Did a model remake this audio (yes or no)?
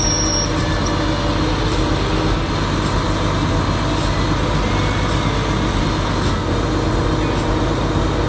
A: no